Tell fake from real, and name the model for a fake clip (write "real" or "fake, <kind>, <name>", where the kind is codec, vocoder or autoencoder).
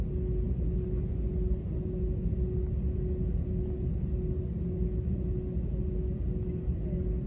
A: real